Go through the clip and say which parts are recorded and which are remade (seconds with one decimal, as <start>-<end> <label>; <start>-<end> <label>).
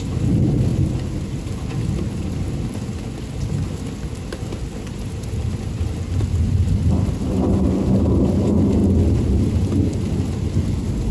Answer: 0.0-11.1 recorded